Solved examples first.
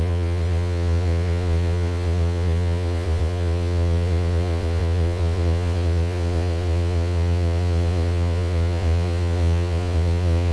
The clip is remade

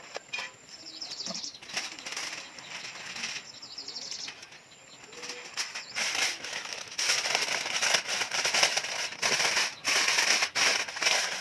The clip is recorded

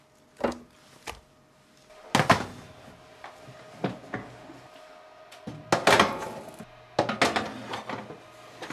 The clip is recorded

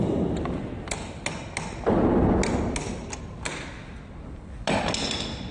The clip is recorded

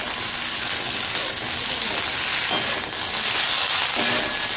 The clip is recorded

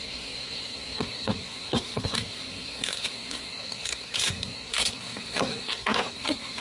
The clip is remade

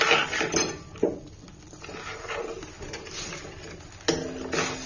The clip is recorded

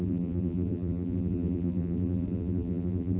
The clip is remade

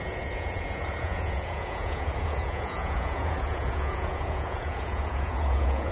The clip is remade